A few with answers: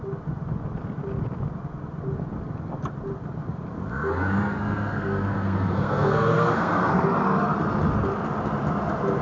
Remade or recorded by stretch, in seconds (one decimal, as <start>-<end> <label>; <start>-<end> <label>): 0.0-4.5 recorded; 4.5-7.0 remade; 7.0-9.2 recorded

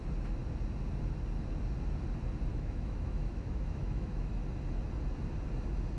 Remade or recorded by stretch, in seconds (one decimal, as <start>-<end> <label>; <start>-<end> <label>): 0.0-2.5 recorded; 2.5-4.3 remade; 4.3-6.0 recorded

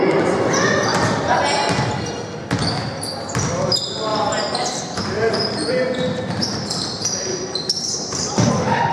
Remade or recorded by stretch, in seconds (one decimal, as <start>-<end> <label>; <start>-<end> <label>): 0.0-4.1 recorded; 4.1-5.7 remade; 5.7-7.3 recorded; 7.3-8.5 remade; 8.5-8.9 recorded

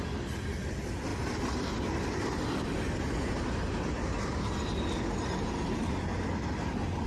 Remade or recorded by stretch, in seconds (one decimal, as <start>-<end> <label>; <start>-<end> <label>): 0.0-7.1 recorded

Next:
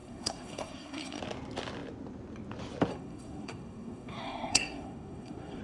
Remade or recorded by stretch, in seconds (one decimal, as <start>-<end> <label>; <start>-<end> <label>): 0.0-1.2 remade; 1.2-2.9 recorded; 2.9-5.6 remade

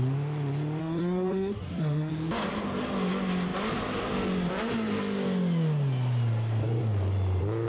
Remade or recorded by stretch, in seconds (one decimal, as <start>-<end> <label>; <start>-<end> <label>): 0.0-0.8 recorded; 0.8-2.1 remade; 2.1-7.7 recorded

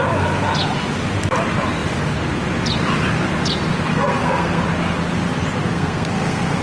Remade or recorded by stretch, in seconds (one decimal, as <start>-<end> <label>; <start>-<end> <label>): 0.0-3.9 recorded; 3.9-4.6 remade; 4.6-5.7 recorded; 5.7-6.6 remade

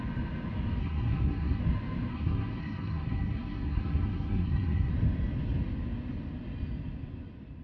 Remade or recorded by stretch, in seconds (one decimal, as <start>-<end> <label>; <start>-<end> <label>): 0.0-0.8 recorded; 0.8-1.6 remade; 1.6-2.1 recorded; 2.1-4.9 remade; 4.9-7.6 recorded